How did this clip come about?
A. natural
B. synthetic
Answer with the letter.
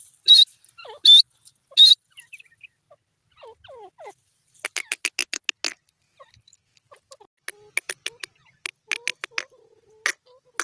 A